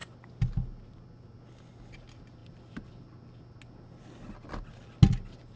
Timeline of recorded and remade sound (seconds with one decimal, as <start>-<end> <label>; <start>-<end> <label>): 0.0-5.6 recorded